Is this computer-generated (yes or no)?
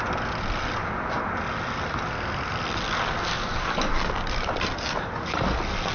no